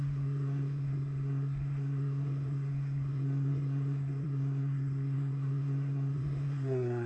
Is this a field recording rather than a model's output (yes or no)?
no